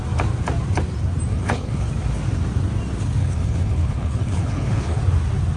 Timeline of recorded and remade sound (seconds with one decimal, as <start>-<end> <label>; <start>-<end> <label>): 0.0-1.3 recorded; 1.3-1.9 remade; 1.9-3.2 recorded; 3.2-5.0 remade; 5.0-5.6 recorded